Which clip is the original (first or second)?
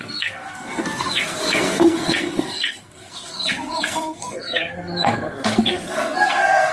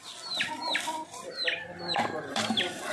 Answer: second